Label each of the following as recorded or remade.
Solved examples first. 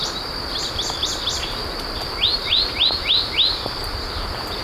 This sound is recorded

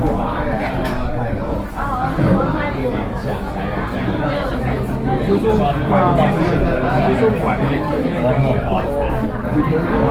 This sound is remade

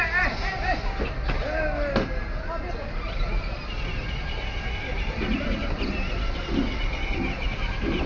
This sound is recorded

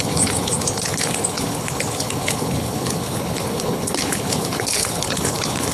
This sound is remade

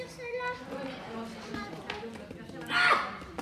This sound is recorded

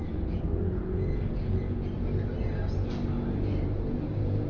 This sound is remade